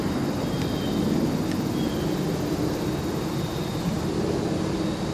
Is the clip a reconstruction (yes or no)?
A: no